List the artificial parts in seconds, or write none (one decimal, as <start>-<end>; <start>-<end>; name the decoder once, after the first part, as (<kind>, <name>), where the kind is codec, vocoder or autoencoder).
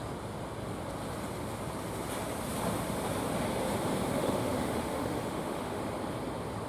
4.1-5.8 (autoencoder, DAC-VAE)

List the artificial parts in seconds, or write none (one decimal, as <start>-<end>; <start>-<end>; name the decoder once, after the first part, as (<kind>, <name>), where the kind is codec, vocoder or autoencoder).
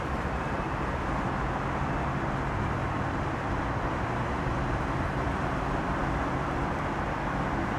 2.8-7.2 (vocoder, BigVGAN v2)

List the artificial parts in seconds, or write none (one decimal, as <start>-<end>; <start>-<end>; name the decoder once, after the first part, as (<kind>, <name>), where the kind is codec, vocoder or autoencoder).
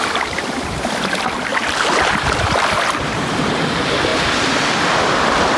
0.0-1.5 (vocoder, BigVGAN v2); 2.0-5.6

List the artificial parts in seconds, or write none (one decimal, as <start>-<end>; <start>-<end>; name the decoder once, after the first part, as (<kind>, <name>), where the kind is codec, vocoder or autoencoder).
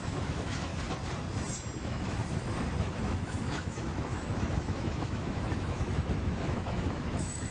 0.0-0.7 (autoencoder, DAC-VAE); 1.8-2.2; 2.8-7.5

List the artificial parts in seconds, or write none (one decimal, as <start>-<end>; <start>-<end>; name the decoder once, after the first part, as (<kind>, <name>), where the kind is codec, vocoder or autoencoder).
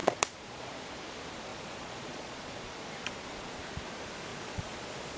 0.0-0.9 (vocoder, Vocos); 1.5-3.7; 4.3-5.2